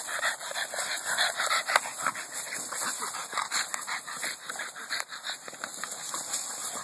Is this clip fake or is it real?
real